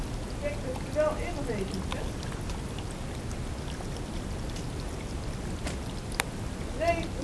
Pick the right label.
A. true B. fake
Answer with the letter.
A